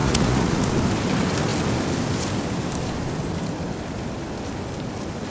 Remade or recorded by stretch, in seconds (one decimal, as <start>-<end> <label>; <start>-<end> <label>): 0.0-0.7 remade; 0.7-5.3 recorded